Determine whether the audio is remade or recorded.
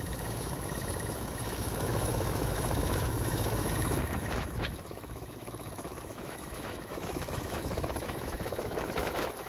remade